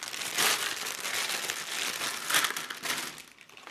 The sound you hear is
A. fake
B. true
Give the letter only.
B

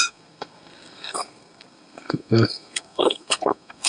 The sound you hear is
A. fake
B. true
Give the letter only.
A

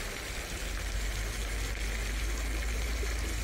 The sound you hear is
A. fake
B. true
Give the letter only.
B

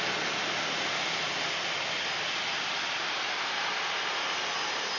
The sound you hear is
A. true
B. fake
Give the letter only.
A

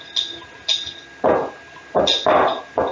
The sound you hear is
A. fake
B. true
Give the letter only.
B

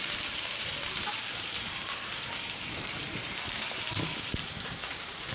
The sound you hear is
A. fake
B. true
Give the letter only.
A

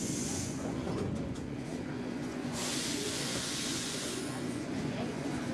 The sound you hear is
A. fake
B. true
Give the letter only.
A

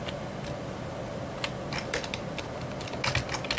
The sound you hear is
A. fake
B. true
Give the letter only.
B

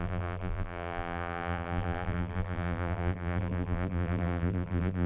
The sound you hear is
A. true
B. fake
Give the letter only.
B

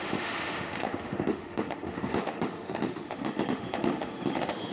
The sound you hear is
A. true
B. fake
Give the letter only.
B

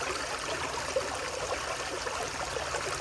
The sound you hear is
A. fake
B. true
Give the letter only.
B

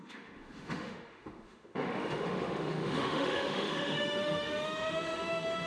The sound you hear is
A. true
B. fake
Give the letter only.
B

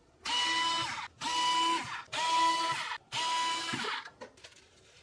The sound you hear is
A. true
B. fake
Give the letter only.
A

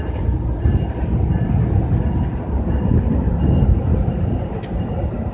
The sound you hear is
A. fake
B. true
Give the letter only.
B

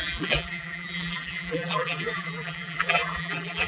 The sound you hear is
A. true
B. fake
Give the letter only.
B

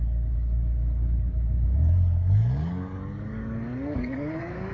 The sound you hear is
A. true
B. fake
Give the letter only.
B